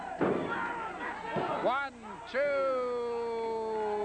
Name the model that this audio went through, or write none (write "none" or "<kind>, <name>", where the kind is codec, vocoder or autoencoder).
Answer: none